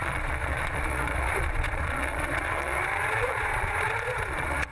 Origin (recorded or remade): remade